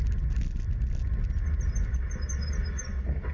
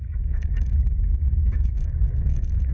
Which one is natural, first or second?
first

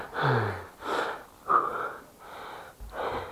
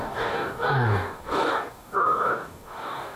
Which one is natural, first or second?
first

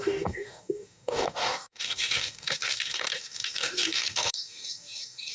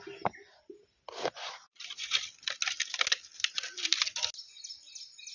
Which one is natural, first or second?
second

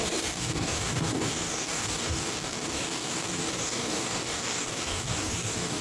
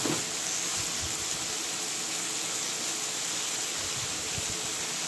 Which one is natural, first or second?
second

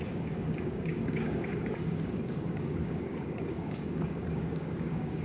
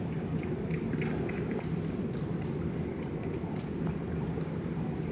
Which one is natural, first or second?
second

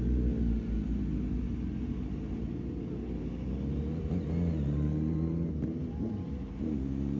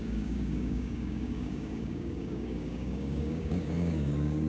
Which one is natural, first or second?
first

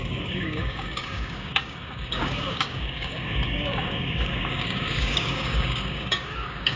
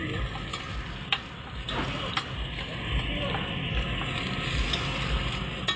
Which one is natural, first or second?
second